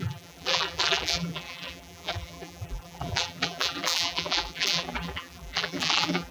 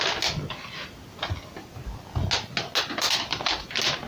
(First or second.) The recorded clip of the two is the second